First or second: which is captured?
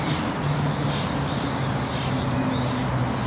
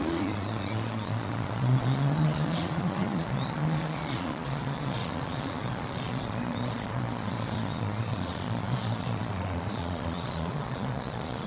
first